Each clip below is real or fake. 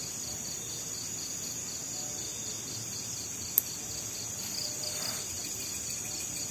real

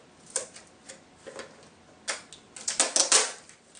real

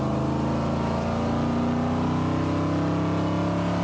real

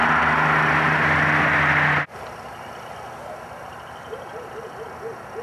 real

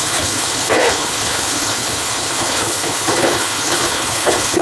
fake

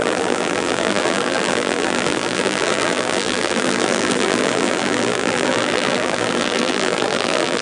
fake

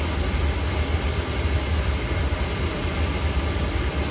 real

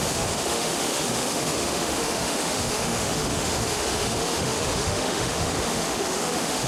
fake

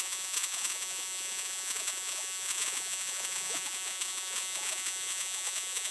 fake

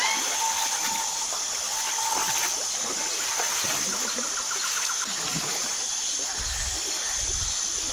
real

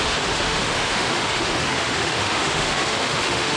fake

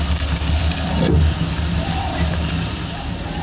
real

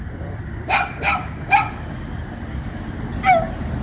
real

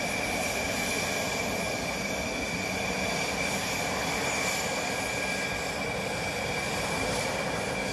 real